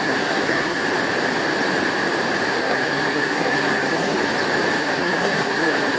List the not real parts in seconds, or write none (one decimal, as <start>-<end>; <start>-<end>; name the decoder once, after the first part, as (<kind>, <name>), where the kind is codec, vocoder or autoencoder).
0.0-0.8 (codec, SNAC); 2.5-4.2; 4.8-6.0